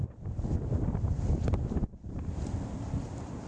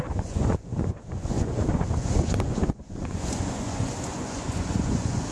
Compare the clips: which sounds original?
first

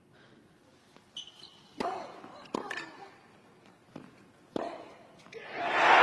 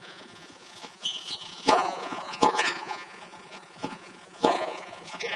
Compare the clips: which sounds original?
first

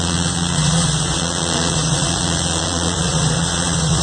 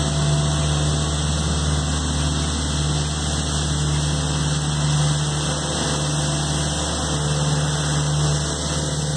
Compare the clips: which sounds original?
second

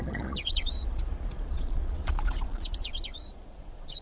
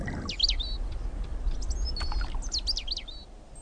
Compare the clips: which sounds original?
second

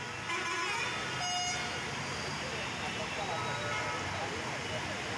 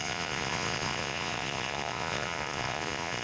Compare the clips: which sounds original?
first